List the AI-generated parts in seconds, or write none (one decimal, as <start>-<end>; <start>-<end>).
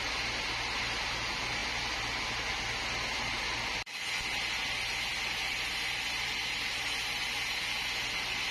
none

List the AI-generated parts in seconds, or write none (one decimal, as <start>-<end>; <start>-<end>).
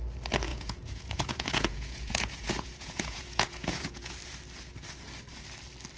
0.5-4.1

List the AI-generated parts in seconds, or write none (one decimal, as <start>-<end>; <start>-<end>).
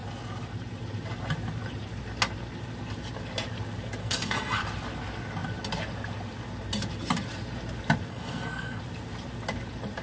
4.0-4.6; 8.1-8.8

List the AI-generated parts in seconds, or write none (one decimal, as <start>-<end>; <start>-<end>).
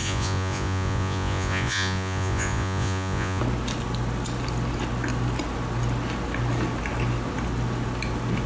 0.0-3.4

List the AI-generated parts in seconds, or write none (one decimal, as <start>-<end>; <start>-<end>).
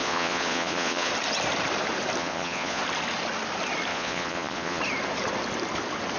0.0-1.1; 2.2-2.8; 3.9-4.8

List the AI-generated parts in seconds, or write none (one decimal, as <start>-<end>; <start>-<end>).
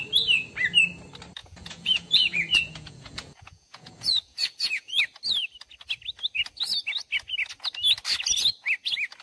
1.4-5.0